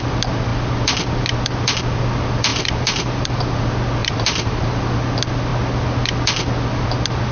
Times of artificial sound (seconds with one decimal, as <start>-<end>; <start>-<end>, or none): 2.5-3.6; 4.0-4.8

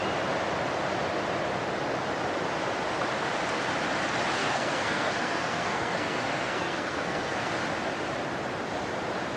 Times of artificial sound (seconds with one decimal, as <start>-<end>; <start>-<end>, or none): 4.4-7.5

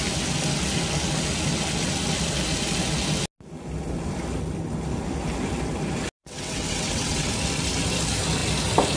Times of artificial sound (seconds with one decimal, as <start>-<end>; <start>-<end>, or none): 6.2-7.3

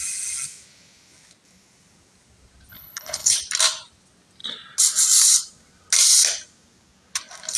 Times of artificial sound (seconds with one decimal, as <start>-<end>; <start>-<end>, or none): 2.7-3.4

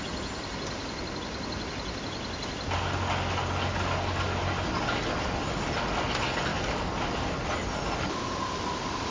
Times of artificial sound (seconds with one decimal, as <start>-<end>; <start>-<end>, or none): none

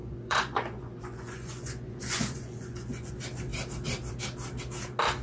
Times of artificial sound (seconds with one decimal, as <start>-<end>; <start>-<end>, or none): 0.0-3.1

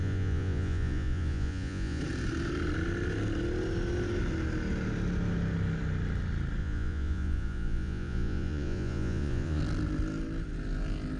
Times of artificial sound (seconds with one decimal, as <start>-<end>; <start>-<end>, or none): 0.0-2.0; 6.6-9.6

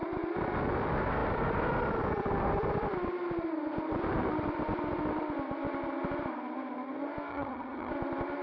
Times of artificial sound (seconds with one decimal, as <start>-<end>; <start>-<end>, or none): 7.3-7.9